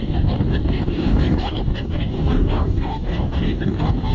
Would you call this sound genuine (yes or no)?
no